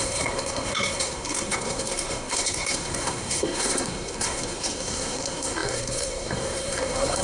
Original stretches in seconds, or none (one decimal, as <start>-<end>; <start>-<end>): none